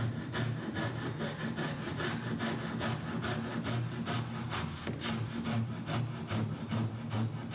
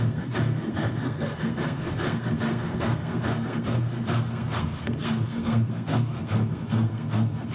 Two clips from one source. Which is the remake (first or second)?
second